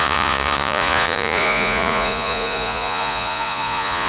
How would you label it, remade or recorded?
remade